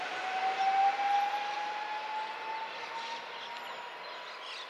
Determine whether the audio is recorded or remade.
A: recorded